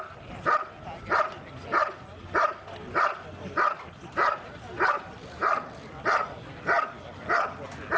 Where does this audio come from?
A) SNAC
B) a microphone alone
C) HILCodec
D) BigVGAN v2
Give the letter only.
B